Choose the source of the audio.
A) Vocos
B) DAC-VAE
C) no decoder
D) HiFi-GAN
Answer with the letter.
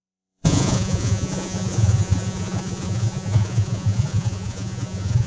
A